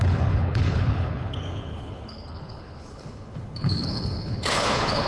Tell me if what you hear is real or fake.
fake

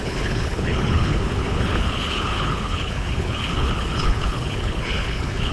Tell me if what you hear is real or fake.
fake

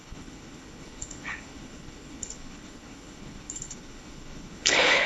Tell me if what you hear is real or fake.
fake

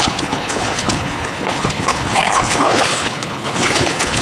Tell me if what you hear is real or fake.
fake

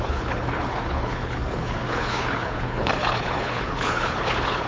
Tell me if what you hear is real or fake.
fake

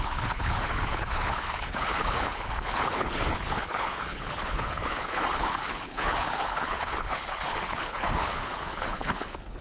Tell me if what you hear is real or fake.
fake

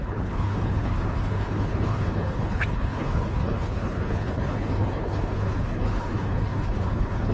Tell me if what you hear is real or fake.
fake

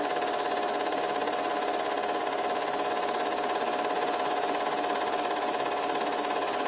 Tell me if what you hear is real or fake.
real